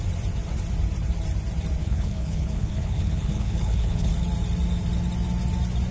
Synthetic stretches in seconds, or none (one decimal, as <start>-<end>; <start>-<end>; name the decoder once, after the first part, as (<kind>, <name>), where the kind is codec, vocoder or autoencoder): 1.8-4.1 (codec, HILCodec)